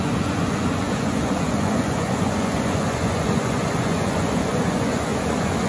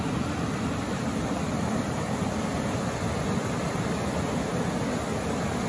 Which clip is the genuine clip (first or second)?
second